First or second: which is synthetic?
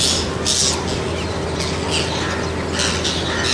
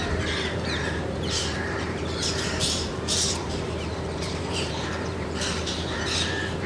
second